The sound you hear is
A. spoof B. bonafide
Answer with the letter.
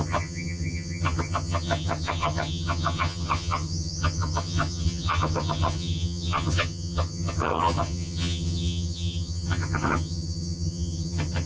A